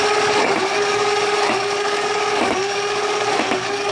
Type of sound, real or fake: fake